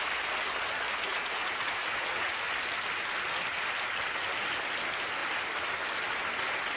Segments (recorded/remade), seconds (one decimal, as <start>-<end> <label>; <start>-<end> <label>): 0.0-1.1 recorded; 1.1-2.4 remade; 2.4-6.8 recorded